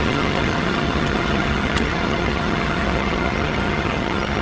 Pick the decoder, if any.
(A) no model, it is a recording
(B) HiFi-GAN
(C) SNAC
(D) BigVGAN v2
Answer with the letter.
B